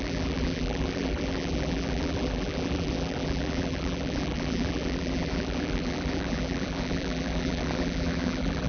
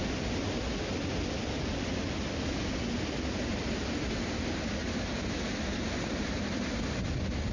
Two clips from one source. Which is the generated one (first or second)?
first